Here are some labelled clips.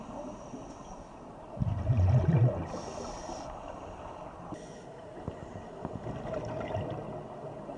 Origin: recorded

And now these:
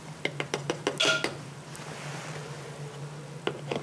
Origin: recorded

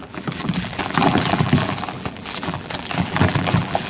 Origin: remade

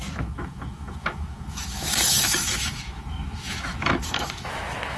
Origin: remade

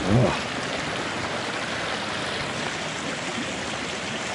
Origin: recorded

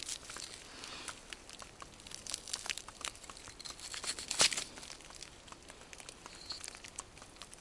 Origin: recorded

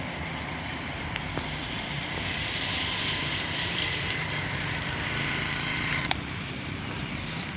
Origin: remade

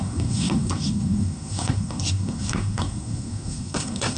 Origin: remade